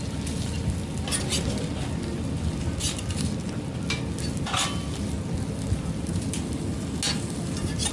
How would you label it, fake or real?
real